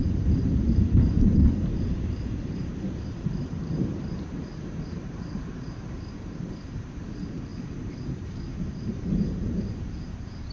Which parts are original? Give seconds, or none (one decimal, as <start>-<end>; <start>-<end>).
7.5-8.7